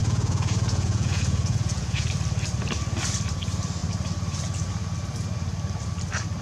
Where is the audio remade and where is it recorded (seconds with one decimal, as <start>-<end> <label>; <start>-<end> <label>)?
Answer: 0.0-2.1 remade; 2.1-6.4 recorded